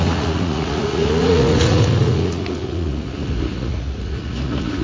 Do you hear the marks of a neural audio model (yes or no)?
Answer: yes